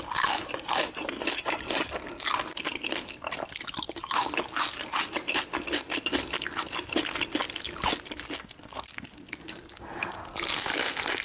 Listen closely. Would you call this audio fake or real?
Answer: real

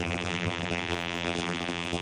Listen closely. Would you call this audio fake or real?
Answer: fake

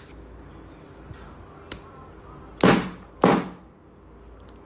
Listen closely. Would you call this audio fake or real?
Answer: real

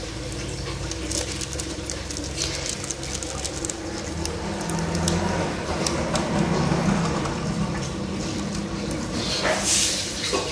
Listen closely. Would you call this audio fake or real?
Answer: real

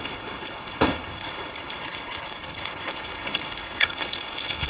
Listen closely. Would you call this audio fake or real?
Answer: fake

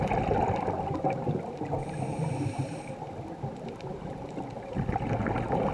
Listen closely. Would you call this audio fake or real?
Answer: real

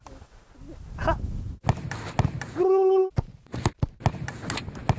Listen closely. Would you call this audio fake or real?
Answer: real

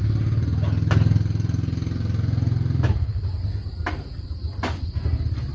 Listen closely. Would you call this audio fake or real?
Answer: real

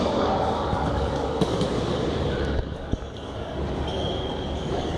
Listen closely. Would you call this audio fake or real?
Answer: fake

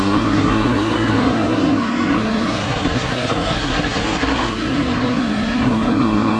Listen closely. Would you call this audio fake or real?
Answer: fake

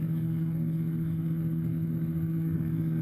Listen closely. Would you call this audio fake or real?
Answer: fake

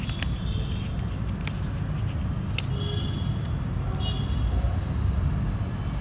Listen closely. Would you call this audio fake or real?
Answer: real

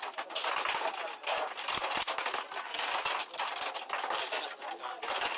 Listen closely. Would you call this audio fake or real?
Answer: real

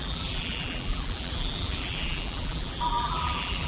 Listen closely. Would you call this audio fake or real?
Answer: fake